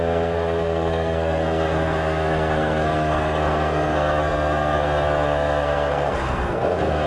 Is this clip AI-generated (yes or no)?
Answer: yes